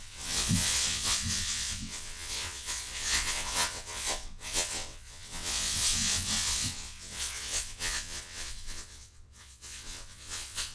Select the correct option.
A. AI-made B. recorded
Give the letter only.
A